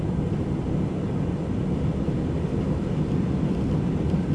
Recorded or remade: recorded